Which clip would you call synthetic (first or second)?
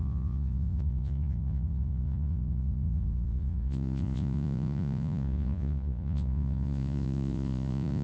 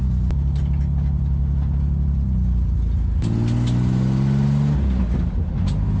first